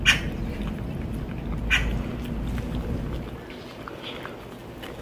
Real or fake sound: real